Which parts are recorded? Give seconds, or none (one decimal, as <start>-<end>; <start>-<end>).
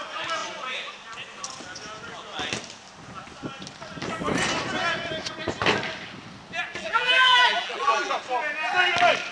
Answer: 0.0-6.8; 8.1-9.3